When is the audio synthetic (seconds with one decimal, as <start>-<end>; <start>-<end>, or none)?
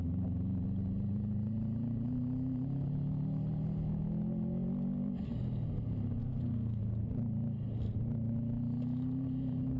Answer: 6.2-6.8